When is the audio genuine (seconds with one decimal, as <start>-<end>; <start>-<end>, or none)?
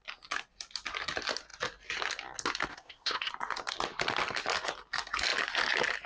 0.0-2.7; 3.3-6.1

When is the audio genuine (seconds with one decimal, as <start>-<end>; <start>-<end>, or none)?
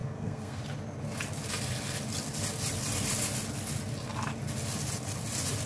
0.6-5.7